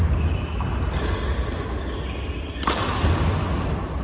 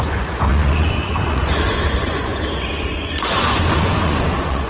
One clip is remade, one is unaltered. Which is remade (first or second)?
second